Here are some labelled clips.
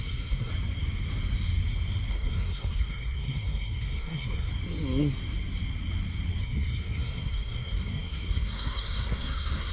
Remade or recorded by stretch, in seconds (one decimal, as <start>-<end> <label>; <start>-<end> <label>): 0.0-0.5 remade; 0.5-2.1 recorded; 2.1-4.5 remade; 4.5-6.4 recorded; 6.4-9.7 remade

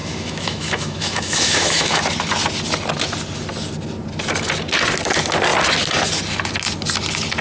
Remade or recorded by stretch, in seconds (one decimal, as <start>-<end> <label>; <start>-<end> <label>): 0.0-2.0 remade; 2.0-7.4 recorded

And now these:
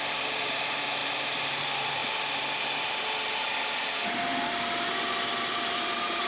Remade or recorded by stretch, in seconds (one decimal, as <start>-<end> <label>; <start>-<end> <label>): 0.0-2.0 remade; 2.0-5.5 recorded; 5.5-6.3 remade

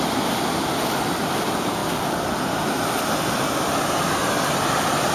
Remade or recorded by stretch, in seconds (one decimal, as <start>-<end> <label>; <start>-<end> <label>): 0.0-5.1 recorded